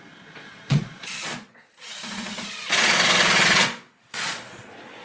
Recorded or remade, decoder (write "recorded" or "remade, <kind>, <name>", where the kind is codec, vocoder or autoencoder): remade, vocoder, Vocos